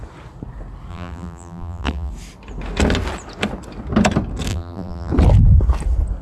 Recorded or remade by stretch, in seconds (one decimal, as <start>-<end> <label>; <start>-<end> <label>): 0.0-0.9 recorded; 0.9-2.1 remade; 2.1-4.5 recorded; 4.5-5.1 remade; 5.1-6.2 recorded